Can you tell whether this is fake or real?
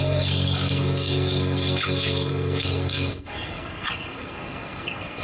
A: fake